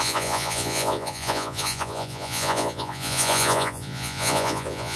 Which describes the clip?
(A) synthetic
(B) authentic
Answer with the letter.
A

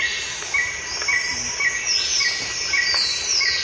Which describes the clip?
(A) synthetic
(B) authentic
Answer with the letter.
B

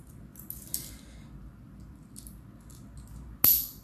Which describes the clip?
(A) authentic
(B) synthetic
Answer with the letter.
A